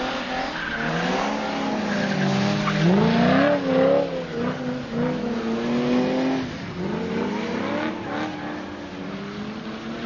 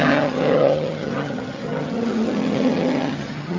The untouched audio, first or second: first